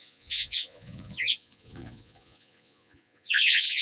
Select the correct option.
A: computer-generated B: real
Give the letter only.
A